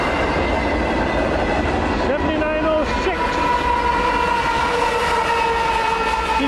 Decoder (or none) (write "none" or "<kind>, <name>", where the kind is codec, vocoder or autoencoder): none